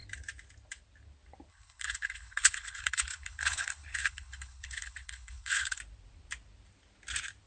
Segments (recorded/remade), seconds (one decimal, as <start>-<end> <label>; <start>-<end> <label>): 0.0-1.5 recorded; 1.5-5.8 remade; 5.8-7.5 recorded